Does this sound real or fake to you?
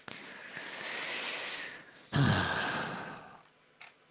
real